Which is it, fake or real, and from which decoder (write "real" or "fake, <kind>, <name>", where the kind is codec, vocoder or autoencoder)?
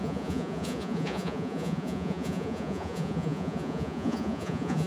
fake, vocoder, Vocos